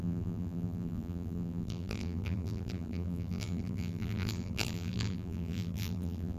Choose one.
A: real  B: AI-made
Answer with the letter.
B